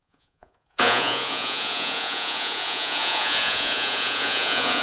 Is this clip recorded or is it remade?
remade